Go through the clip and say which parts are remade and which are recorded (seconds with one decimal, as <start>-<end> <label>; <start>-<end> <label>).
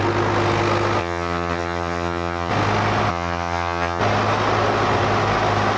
0.0-1.0 recorded; 1.0-2.5 remade; 2.5-3.1 recorded; 3.1-4.0 remade; 4.0-5.8 recorded